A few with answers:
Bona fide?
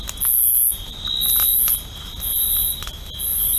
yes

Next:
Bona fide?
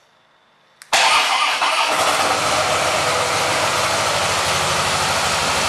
yes